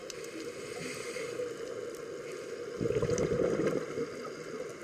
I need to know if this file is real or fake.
real